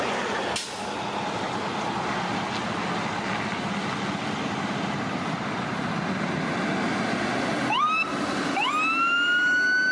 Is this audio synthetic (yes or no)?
no